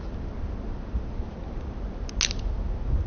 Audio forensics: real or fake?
real